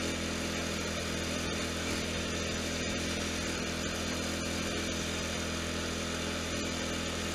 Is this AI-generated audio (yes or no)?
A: no